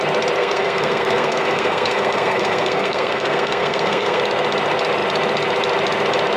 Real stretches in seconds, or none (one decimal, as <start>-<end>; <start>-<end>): 0.0-0.4; 4.2-6.4

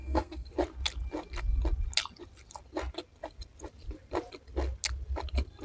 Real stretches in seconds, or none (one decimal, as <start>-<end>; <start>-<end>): 0.5-5.6

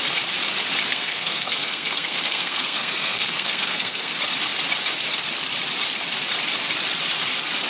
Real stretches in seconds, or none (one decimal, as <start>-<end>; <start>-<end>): 0.0-0.9; 4.1-7.7

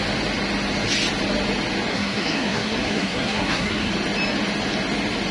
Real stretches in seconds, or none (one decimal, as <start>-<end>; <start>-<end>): 0.0-1.9; 3.9-5.3

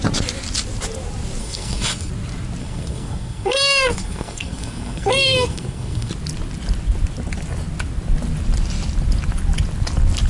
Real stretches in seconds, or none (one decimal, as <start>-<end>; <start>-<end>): 0.0-1.4; 2.1-2.6; 6.1-10.3

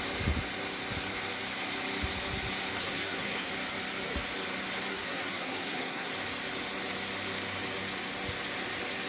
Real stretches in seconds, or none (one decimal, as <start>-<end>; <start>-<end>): 0.0-2.8; 3.5-4.9; 6.1-9.1

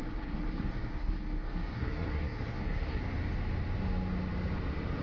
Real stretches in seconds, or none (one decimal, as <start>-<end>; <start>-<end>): 3.0-5.0

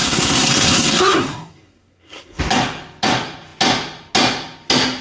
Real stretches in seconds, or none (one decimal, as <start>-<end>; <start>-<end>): 2.4-5.0